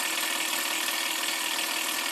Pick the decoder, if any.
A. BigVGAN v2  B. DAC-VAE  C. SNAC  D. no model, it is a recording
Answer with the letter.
D